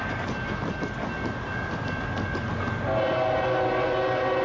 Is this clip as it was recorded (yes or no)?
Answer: yes